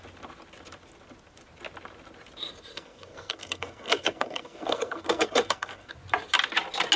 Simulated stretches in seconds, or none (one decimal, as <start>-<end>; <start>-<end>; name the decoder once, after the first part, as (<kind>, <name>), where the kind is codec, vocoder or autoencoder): 2.7-5.9 (codec, SNAC)